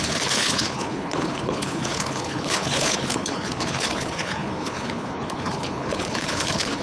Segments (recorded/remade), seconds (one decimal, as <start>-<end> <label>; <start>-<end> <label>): 0.0-6.8 remade